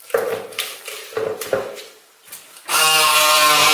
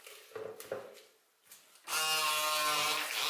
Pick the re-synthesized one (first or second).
first